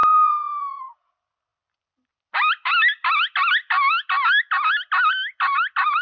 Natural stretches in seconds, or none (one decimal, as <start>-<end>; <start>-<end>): 1.1-6.0